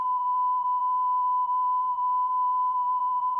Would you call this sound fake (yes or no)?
yes